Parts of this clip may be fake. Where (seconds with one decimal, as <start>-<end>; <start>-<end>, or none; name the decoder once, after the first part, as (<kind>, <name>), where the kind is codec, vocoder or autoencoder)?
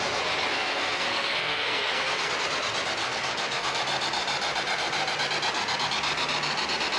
0.5-2.3 (codec, SNAC); 3.0-3.8